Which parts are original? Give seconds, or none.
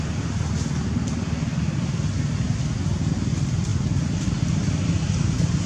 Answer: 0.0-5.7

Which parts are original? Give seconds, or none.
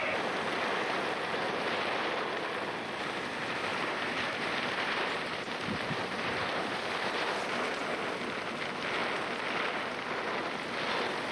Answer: 0.0-3.7; 7.3-11.3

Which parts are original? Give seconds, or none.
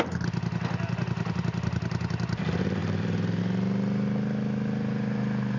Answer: 0.0-2.8; 3.4-5.6